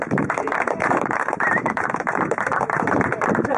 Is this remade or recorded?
remade